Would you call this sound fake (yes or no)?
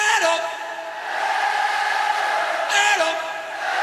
no